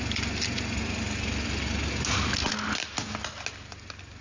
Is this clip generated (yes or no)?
no